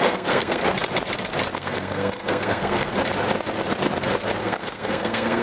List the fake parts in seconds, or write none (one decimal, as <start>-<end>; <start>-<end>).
0.0-0.6; 1.5-2.9; 4.4-5.4